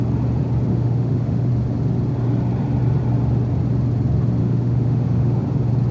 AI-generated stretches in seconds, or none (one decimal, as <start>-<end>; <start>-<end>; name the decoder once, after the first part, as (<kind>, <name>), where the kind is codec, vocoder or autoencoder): 0.7-1.5 (autoencoder, DAC-VAE); 4.4-5.4